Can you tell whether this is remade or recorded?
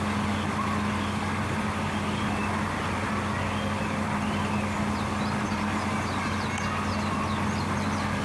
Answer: recorded